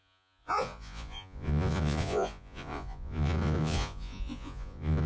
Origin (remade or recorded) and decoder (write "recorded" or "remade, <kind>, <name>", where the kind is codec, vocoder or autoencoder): remade, vocoder, Vocos